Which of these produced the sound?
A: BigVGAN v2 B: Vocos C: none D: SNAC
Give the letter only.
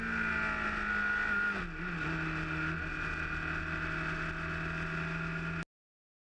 C